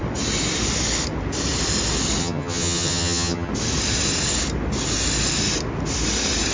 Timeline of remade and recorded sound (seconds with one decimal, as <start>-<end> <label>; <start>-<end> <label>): 0.0-2.2 recorded; 2.2-3.5 remade; 3.5-6.5 recorded